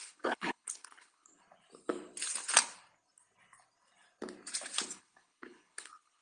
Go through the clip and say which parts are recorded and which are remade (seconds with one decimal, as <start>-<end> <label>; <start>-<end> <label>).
0.0-1.3 remade; 1.3-5.0 recorded; 5.0-6.2 remade